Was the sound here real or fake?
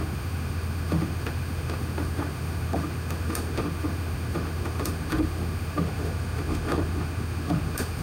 fake